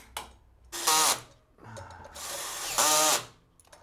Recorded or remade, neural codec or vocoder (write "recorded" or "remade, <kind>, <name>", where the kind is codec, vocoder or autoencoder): recorded